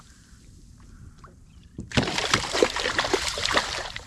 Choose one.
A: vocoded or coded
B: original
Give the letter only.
A